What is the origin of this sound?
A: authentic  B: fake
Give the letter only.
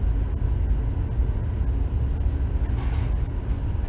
A